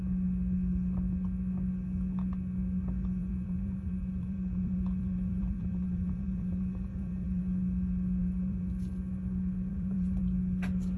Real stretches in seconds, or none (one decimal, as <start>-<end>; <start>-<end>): 0.0-3.2; 7.4-8.2; 8.7-9.7; 10.2-11.0

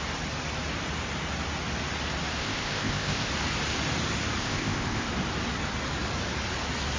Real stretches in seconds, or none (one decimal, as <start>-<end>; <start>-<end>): 0.0-2.4; 3.3-4.4; 5.1-7.0

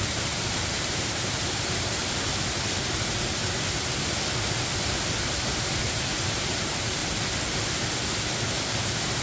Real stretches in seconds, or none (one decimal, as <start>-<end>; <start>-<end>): 2.0-3.0; 3.4-5.6; 7.0-8.5

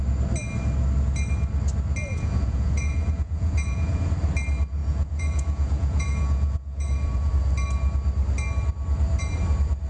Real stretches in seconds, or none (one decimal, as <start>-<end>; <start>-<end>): 0.0-2.1; 4.1-4.8; 7.3-9.9